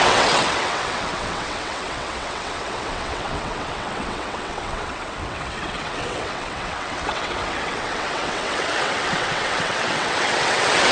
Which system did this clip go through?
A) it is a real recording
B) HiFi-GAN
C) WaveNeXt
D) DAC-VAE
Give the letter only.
C